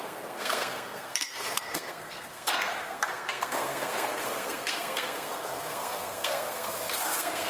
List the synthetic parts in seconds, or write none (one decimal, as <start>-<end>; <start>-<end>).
0.0-7.5